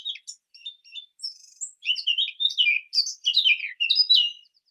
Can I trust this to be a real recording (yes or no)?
yes